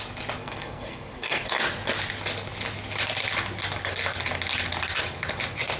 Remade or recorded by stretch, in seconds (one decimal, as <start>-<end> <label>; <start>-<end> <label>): 0.0-0.4 recorded; 0.4-1.6 remade; 1.6-5.8 recorded